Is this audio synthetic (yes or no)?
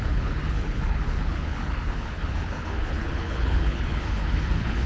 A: yes